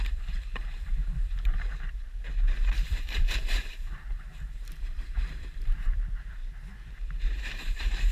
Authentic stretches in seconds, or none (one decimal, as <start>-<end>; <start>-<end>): 6.4-7.2